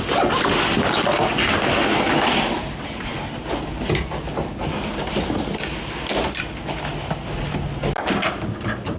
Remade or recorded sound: recorded